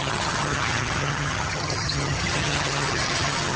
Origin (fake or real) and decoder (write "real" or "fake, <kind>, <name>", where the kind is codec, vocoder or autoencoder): fake, vocoder, HiFi-GAN